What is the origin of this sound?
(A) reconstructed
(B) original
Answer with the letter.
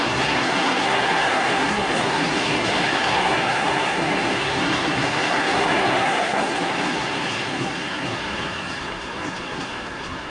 A